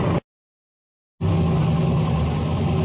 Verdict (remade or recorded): recorded